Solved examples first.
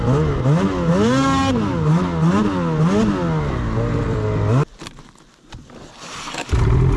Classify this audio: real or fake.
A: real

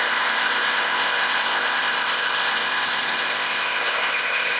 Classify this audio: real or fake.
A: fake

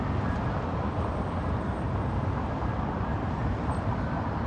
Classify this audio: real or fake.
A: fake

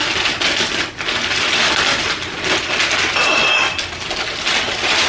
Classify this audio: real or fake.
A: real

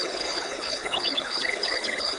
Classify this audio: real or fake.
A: fake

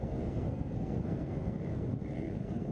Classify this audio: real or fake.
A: fake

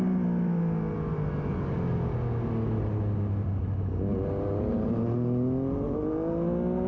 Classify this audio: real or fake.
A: real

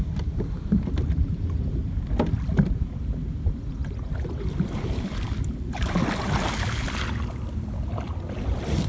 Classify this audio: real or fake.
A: real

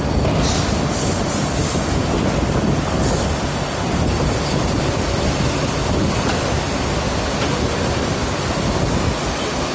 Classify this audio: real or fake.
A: real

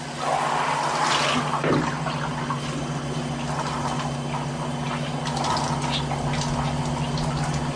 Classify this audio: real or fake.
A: real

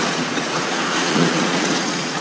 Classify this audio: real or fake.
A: fake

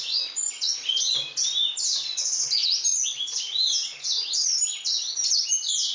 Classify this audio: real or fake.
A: real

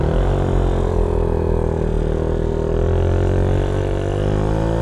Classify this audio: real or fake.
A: real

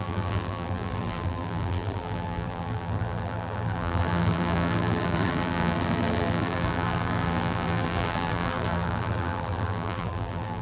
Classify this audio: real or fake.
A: fake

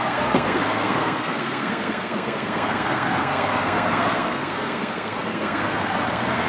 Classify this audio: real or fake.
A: fake